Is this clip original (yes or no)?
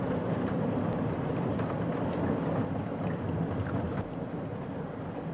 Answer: yes